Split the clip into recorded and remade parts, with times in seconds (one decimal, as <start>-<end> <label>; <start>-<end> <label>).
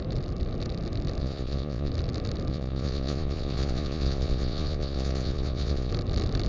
0.0-1.2 recorded; 1.2-1.9 remade; 1.9-2.5 recorded; 2.5-5.9 remade; 5.9-6.5 recorded